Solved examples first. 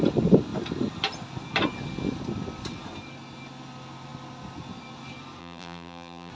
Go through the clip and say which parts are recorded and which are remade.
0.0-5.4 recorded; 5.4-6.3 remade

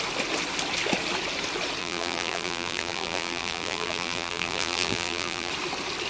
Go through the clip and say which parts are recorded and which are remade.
0.0-1.8 recorded; 1.8-5.5 remade; 5.5-6.1 recorded

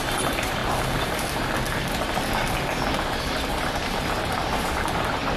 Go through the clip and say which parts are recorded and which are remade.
0.0-0.6 remade; 0.6-3.5 recorded; 3.5-5.4 remade